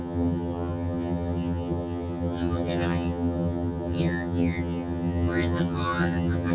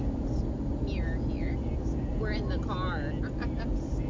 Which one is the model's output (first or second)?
first